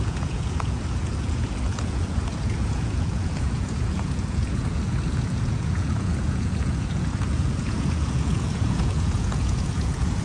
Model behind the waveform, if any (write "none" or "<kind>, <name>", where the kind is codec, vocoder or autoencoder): vocoder, Vocos